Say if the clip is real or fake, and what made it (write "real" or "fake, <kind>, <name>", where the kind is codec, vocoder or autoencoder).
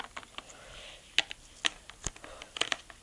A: real